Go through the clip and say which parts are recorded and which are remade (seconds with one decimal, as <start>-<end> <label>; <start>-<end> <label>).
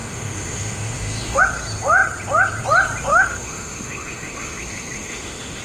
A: 0.0-1.4 remade; 1.4-3.1 recorded; 3.1-5.6 remade